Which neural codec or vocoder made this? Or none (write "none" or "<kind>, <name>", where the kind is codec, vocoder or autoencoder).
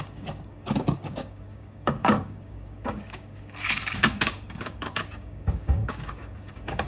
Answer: codec, DAC